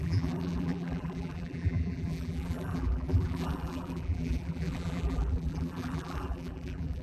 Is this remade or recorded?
remade